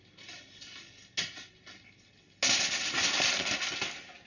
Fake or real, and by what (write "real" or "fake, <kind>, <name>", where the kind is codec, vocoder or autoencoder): real